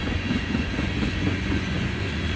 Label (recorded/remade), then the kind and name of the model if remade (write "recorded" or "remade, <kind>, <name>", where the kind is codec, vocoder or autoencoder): remade, vocoder, Vocos